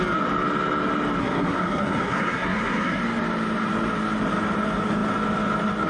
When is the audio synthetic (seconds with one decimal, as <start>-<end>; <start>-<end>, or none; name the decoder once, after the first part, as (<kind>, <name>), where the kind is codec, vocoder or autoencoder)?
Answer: 1.2-3.0 (codec, SNAC)